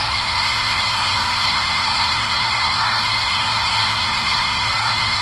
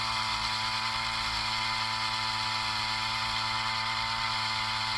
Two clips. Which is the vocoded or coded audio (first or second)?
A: first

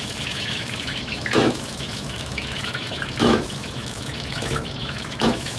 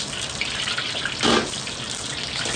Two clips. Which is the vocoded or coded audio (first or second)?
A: first